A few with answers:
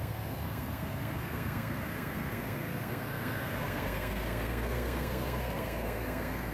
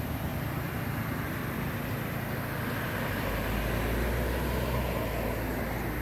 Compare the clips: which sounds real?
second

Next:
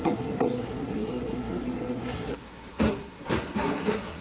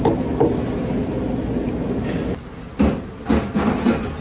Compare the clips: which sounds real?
second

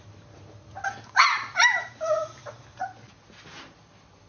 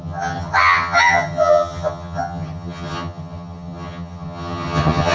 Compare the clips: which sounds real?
first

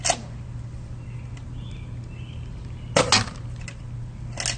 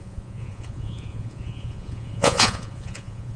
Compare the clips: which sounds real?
first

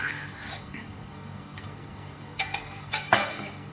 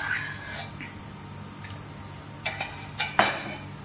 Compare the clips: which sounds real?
second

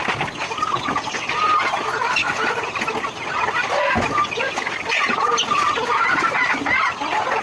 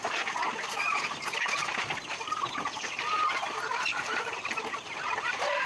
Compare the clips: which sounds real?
first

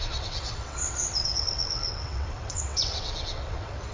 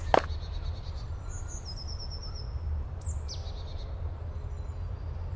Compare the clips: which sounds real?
second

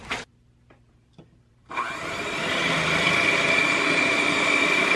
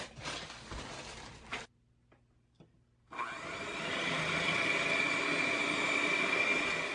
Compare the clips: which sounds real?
second